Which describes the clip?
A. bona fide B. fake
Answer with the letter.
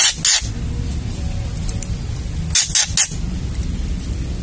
A